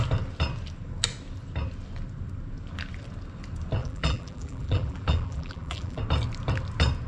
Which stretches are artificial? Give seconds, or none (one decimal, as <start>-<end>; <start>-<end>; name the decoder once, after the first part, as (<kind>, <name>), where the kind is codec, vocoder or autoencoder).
3.8-6.0 (vocoder, BigVGAN v2)